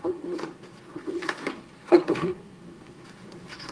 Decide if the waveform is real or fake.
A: fake